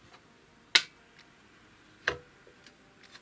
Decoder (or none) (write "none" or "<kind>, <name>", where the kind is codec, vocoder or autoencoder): none